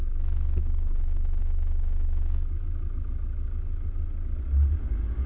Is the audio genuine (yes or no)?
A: yes